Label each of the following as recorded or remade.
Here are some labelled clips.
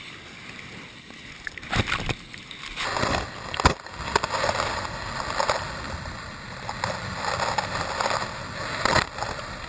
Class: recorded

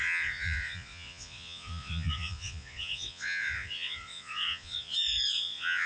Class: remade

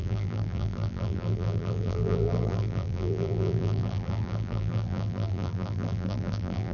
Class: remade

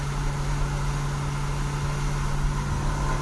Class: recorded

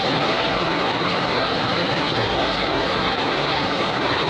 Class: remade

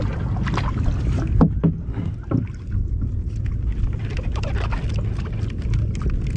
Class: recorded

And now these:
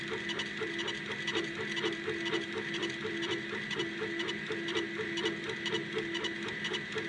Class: recorded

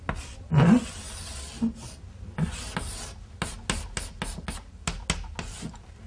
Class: recorded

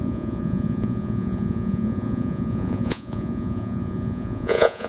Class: remade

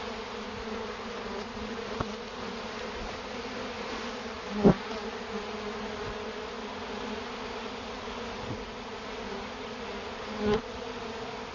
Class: recorded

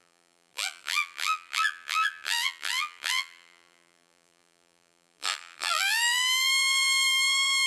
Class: remade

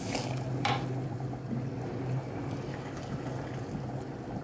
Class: recorded